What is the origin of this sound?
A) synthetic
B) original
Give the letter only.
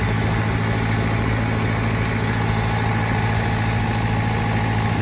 B